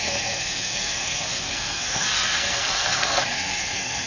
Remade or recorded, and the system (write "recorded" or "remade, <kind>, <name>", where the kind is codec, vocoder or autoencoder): remade, codec, SNAC